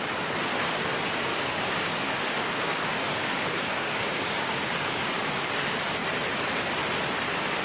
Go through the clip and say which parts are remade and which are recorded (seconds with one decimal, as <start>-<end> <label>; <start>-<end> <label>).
0.0-1.3 recorded; 1.3-5.5 remade; 5.5-7.6 recorded